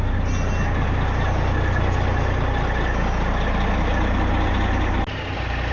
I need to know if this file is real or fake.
real